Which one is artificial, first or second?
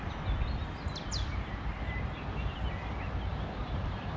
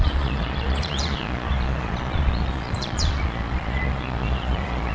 second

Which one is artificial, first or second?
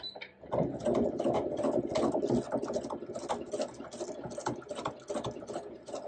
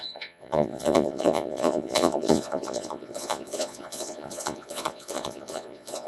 second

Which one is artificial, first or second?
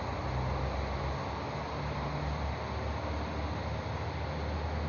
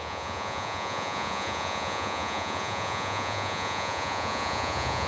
second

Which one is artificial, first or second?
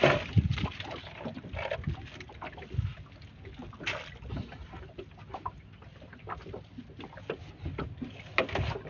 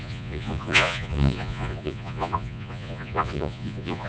second